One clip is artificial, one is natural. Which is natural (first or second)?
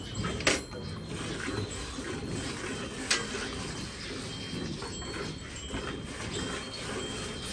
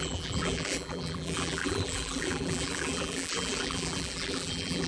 first